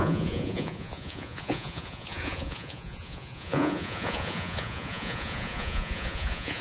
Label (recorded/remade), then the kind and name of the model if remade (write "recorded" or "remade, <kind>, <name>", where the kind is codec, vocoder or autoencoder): remade, vocoder, Vocos